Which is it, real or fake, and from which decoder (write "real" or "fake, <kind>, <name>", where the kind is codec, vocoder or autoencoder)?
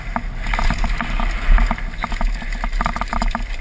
real